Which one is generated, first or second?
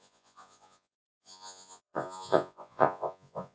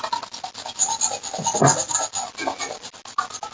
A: first